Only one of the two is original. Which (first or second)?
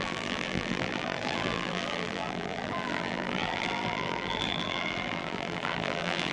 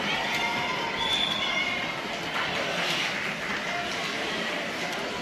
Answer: second